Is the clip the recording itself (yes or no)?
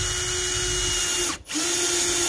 yes